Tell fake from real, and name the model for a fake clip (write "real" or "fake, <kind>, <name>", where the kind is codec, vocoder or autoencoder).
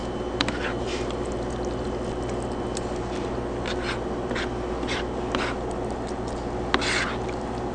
real